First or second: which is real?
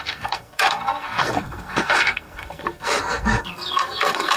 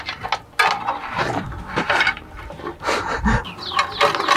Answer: second